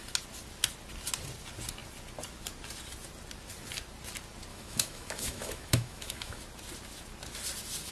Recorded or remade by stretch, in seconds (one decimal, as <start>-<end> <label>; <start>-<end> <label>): 0.0-4.5 recorded; 4.5-6.4 remade; 6.4-7.9 recorded